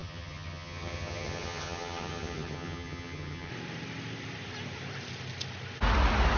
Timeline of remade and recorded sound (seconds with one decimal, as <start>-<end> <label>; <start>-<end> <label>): 0.0-3.5 remade; 3.5-6.4 recorded